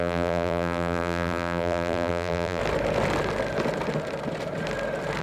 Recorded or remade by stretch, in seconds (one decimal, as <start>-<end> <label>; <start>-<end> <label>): 0.0-2.6 remade; 2.6-5.2 recorded

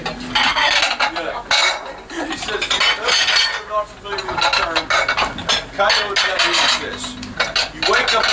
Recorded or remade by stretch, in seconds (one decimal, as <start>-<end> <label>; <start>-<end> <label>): 0.0-8.3 recorded

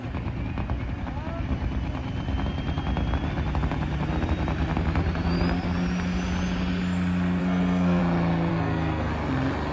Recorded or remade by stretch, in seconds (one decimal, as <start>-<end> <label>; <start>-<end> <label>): 0.0-7.4 recorded; 7.4-8.0 remade; 8.0-8.5 recorded; 8.5-9.1 remade; 9.1-9.7 recorded

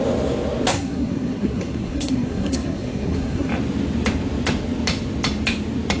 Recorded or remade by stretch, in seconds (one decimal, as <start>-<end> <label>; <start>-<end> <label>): 0.0-0.7 recorded; 0.7-3.5 remade; 3.5-6.0 recorded

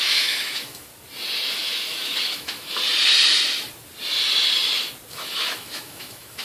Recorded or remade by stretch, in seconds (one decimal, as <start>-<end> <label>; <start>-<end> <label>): 0.0-0.9 remade; 0.9-1.5 recorded; 1.5-2.8 remade; 2.8-5.1 recorded; 5.1-6.4 remade

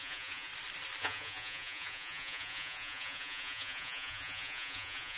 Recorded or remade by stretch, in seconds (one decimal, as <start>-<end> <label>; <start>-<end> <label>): 0.0-0.5 remade; 0.5-1.0 recorded; 1.0-5.2 remade